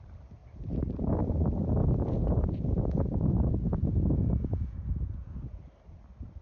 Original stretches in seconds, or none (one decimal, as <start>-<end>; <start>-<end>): 0.0-1.8; 5.6-6.4